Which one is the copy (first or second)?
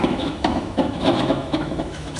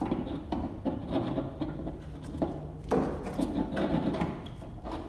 first